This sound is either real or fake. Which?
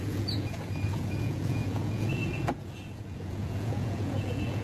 fake